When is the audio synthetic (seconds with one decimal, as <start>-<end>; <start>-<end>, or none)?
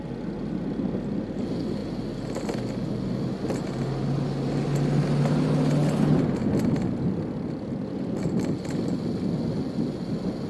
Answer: none